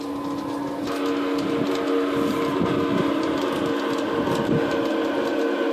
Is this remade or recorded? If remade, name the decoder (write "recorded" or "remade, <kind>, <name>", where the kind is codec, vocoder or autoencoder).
recorded